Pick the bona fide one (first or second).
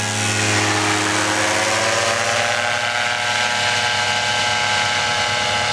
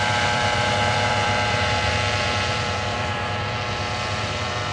first